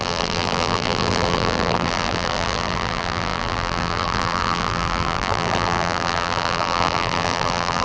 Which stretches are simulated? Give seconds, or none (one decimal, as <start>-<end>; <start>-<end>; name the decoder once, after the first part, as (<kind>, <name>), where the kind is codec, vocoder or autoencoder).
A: 0.0-7.8 (vocoder, BigVGAN v2)